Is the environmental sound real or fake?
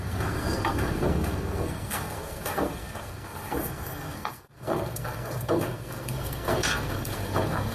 fake